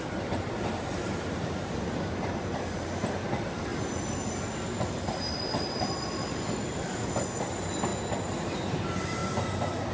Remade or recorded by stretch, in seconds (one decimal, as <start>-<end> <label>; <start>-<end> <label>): 0.0-3.7 remade; 3.7-7.4 recorded; 7.4-7.9 remade; 7.9-8.7 recorded; 8.7-9.2 remade; 9.2-9.9 recorded